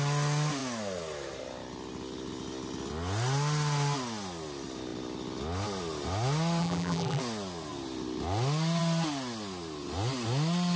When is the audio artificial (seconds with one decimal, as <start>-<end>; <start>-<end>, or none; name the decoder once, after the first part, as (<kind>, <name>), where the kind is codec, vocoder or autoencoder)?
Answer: 6.6-7.2 (vocoder, BigVGAN v2)